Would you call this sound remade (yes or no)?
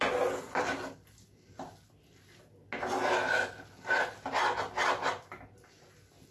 no